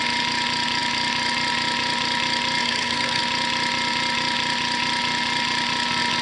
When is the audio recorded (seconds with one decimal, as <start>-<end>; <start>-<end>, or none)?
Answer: 0.0-2.6; 3.2-6.2